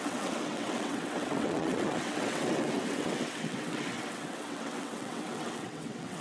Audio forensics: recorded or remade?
remade